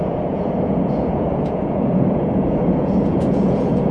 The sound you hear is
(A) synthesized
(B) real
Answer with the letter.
A